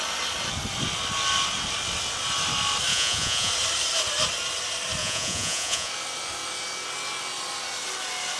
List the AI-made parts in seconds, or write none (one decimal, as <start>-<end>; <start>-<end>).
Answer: 2.9-3.5; 5.0-5.9